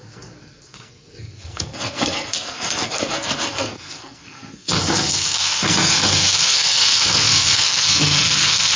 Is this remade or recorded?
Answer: remade